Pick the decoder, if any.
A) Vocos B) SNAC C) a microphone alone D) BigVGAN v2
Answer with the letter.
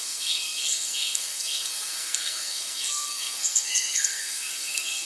B